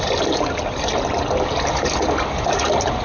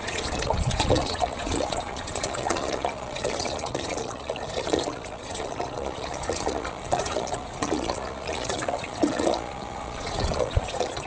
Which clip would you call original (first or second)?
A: first